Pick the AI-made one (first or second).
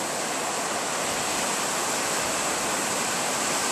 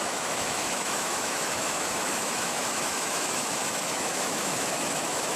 second